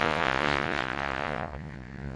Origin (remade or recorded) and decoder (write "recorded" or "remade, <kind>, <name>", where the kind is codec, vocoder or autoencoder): remade, vocoder, Vocos